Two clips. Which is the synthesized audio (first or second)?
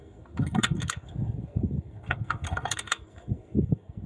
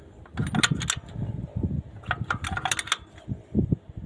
first